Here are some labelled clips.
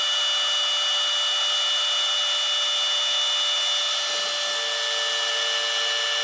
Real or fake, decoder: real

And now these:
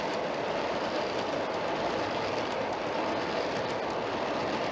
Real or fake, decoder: real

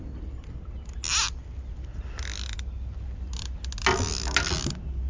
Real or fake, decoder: real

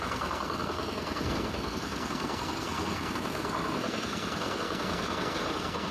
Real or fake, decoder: fake, codec, SNAC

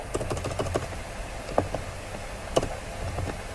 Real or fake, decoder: real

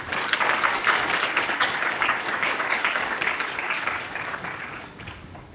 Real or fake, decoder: fake, codec, DAC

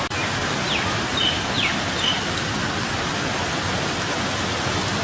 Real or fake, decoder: real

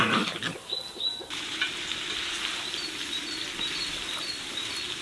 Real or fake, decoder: real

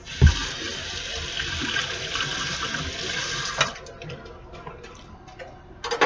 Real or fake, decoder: real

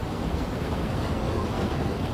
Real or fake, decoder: fake, codec, SNAC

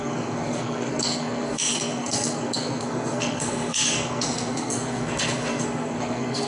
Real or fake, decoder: fake, codec, SNAC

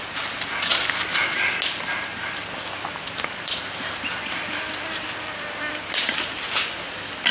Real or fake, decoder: real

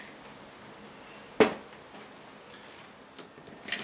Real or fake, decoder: real